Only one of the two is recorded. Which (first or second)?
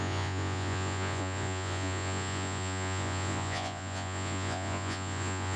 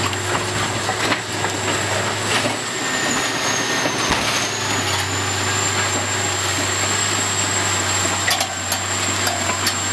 second